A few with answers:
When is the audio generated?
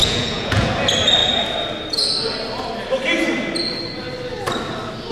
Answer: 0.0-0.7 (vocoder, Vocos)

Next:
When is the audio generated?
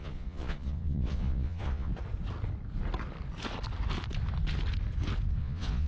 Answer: 0.0-1.9 (vocoder, Vocos); 5.4-5.9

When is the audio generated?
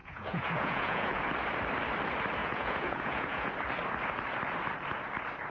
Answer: 0.0-1.3 (vocoder, Vocos); 2.4-3.5